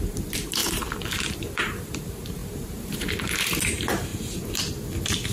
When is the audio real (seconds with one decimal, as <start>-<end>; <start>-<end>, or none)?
4.1-5.3